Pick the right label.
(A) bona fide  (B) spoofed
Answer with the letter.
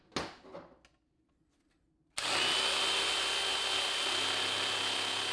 A